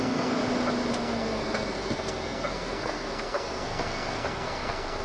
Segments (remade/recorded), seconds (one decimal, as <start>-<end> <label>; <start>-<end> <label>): 0.0-0.4 remade; 0.4-0.9 recorded; 0.9-5.0 remade